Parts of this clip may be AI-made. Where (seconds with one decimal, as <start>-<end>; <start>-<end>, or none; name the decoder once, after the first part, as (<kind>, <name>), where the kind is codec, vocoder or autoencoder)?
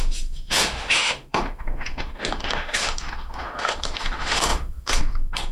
0.0-5.5 (autoencoder, DAC-VAE)